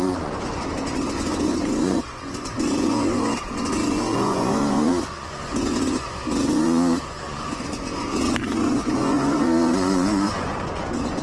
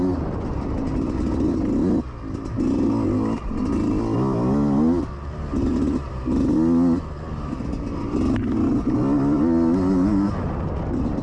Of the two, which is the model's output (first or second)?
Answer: first